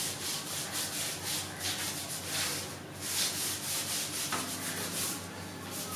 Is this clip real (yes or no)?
yes